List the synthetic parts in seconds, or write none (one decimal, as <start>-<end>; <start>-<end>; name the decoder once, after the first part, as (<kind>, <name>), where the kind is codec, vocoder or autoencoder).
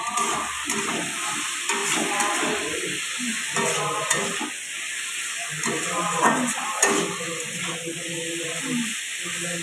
1.8-2.4 (vocoder, BigVGAN v2)